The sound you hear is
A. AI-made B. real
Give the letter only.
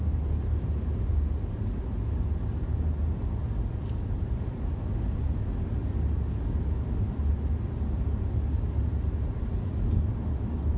B